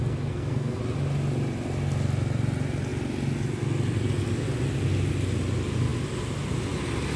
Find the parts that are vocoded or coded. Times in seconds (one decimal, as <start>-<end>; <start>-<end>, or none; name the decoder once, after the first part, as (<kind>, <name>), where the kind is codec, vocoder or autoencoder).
0.0-0.8 (codec, SNAC)